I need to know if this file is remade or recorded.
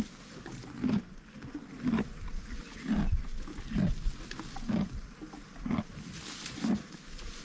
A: recorded